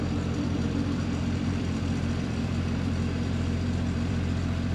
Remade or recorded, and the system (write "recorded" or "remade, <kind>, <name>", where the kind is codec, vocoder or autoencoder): remade, vocoder, BigVGAN v2